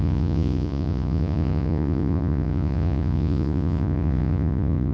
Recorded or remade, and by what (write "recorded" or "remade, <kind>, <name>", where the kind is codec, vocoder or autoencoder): remade, vocoder, Vocos